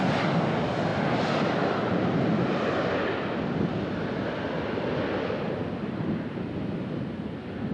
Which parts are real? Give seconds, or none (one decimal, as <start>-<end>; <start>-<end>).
0.0-7.7